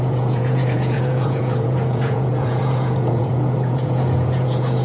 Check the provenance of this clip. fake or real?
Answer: fake